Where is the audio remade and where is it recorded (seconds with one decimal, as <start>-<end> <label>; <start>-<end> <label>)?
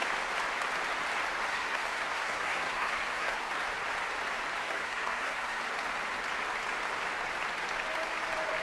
0.0-1.5 recorded; 1.5-3.5 remade; 3.5-4.6 recorded; 4.6-5.6 remade; 5.6-8.6 recorded